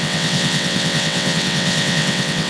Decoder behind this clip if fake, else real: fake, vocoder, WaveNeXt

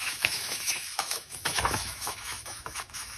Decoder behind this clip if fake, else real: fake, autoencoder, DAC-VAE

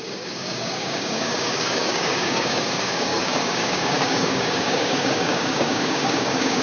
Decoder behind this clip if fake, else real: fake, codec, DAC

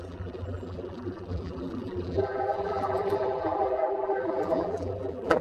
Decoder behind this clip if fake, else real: fake, vocoder, BigVGAN v2